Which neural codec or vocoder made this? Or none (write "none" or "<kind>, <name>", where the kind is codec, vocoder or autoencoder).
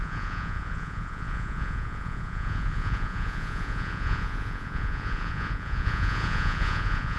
vocoder, Vocos